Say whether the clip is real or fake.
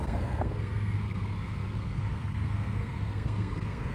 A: fake